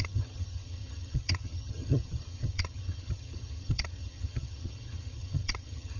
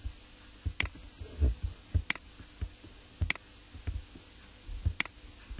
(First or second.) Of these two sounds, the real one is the second